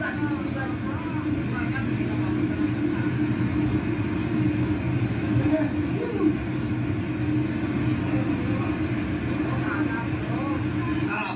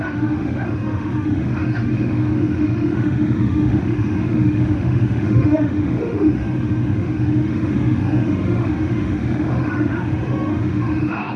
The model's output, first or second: second